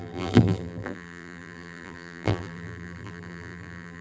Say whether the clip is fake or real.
fake